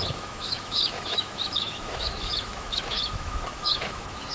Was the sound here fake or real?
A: fake